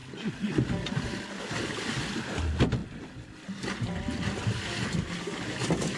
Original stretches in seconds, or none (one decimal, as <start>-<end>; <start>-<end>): 0.0-6.0